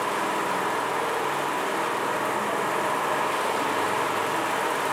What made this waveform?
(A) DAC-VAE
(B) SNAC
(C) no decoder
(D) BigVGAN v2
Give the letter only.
C